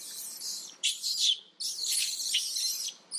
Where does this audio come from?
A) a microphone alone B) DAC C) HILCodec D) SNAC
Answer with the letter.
A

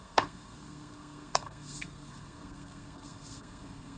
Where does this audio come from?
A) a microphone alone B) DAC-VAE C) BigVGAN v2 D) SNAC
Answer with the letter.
D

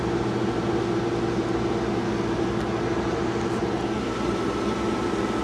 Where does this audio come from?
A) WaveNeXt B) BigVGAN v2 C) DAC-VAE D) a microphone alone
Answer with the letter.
D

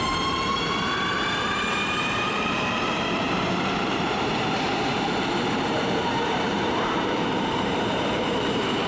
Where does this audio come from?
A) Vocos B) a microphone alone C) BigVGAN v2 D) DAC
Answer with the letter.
C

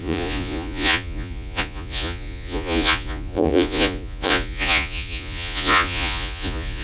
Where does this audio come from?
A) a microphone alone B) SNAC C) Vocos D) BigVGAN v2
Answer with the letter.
C